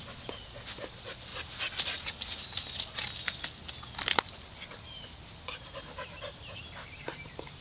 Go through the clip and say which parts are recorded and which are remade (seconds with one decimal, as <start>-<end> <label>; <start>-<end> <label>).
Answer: 0.0-1.3 remade; 1.3-4.1 recorded; 4.1-7.6 remade